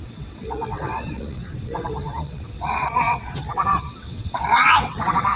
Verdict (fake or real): fake